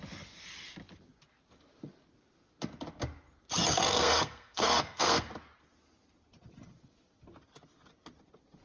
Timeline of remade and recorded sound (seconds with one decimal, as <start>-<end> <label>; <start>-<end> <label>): 0.0-3.7 recorded; 3.7-5.3 remade; 5.3-8.6 recorded